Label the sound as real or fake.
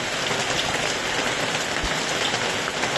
real